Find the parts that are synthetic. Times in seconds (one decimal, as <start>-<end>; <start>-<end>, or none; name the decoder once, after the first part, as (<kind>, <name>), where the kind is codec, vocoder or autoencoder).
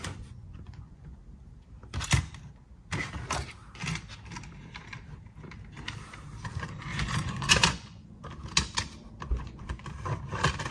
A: 0.0-1.2 (vocoder, Vocos); 6.5-8.2; 9.3-9.8